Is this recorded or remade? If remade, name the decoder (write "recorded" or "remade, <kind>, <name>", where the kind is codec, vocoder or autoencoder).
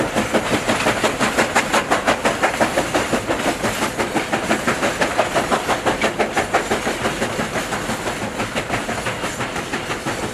recorded